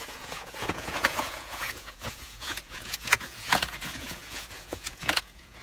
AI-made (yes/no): yes